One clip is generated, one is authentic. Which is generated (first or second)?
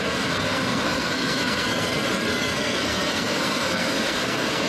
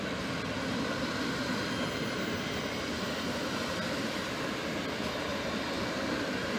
first